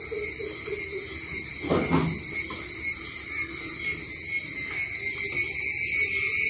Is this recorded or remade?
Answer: recorded